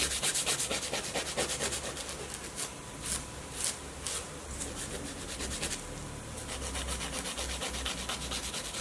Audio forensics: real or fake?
real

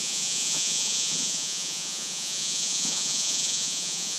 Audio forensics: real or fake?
fake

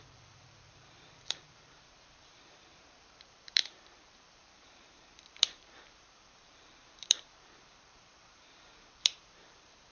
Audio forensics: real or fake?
fake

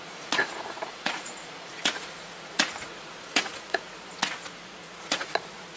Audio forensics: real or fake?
fake